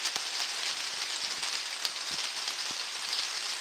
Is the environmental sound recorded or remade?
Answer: recorded